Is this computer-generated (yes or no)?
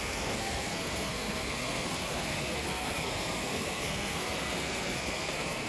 yes